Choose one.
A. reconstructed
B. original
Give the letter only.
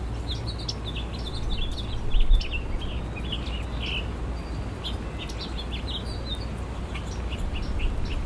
B